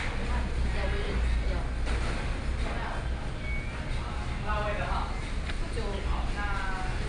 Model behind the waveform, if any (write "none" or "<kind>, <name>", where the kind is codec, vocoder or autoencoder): none